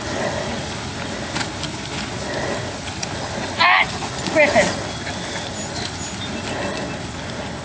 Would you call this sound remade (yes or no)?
no